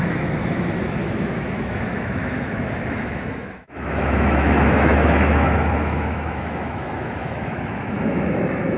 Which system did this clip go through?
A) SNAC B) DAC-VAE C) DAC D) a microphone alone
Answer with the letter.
B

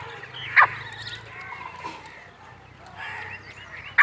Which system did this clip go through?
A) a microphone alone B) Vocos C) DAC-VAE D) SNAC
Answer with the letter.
A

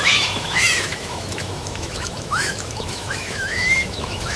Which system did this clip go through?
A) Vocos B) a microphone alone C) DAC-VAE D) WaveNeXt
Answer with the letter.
C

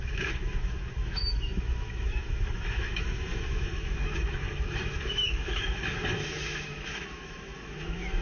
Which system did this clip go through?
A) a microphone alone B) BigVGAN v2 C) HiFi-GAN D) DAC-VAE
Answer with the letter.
D